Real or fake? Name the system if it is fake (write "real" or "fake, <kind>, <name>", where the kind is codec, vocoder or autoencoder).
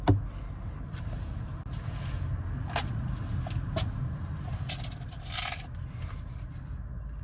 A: real